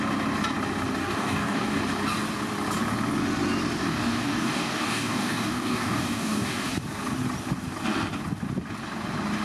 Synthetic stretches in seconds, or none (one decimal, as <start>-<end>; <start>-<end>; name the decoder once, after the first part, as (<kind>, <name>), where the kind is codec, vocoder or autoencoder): 1.0-1.8 (codec, DAC); 3.8-6.7